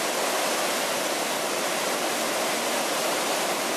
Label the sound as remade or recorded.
recorded